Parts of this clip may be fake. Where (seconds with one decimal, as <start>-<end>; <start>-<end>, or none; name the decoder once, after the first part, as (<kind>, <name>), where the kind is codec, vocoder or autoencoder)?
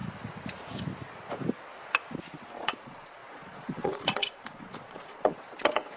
2.6-6.0 (vocoder, Vocos)